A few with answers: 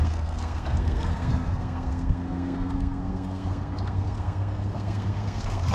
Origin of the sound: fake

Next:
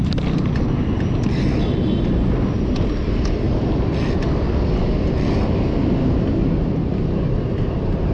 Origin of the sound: real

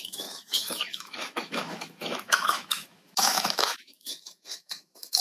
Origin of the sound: fake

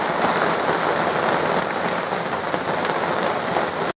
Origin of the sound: real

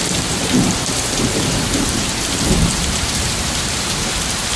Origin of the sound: fake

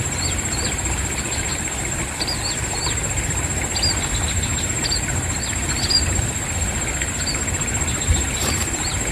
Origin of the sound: fake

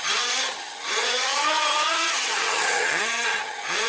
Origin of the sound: fake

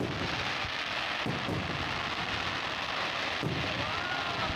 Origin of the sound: real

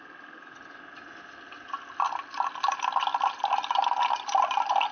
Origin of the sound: real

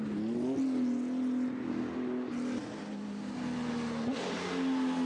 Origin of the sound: real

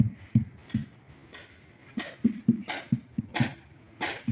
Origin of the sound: real